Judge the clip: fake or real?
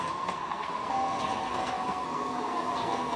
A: fake